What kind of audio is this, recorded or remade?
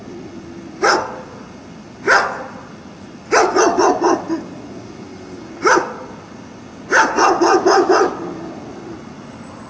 recorded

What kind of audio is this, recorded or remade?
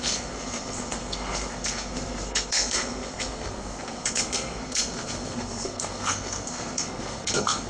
remade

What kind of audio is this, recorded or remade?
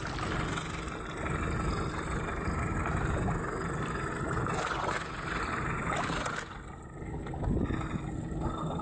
recorded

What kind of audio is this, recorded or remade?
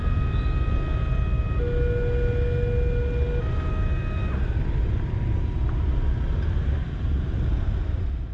recorded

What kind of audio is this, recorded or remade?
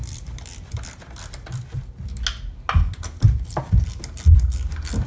recorded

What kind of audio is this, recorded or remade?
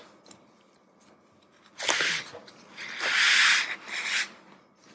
recorded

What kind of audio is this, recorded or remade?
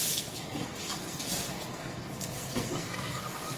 remade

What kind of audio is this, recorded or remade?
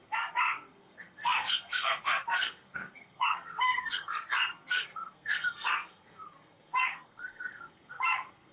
remade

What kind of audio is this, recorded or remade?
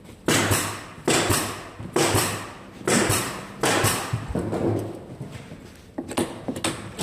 recorded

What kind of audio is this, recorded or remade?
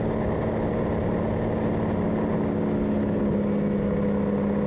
recorded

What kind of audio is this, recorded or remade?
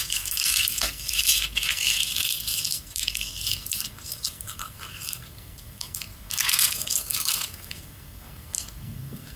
remade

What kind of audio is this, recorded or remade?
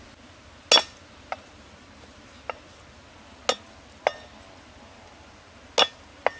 recorded